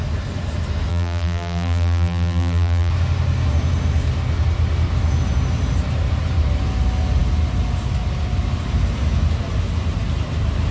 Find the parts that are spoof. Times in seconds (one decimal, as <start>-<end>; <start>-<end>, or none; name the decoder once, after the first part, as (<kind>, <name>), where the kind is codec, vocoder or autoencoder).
0.9-2.9 (vocoder, BigVGAN v2)